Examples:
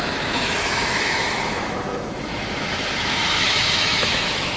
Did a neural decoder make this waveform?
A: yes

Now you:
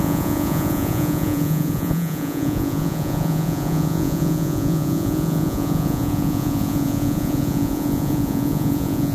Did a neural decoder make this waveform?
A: yes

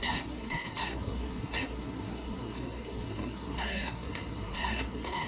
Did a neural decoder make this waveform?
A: yes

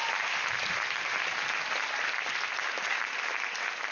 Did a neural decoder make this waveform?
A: no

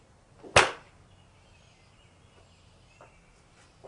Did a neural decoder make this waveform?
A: no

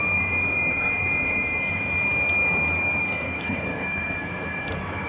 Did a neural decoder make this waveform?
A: yes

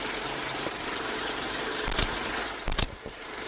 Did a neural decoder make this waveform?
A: yes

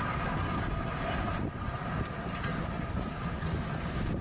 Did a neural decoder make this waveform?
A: no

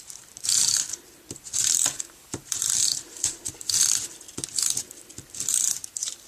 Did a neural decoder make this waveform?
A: no